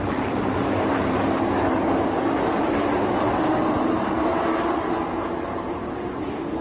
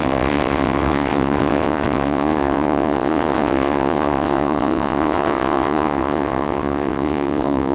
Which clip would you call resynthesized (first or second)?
second